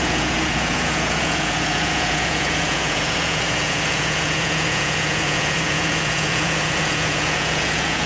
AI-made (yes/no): yes